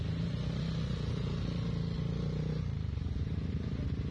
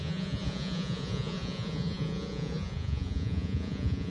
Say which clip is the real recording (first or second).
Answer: first